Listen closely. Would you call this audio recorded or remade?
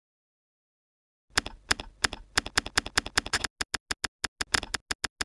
recorded